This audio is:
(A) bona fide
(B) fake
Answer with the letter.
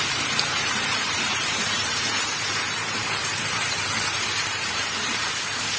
B